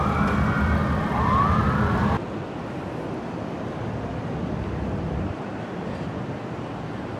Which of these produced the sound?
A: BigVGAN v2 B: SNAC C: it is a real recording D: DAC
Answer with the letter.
C